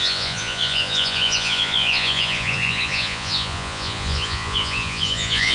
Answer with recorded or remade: remade